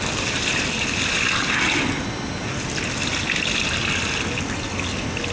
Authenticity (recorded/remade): recorded